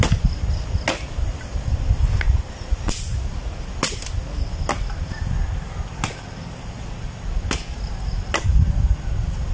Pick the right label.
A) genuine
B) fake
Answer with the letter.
A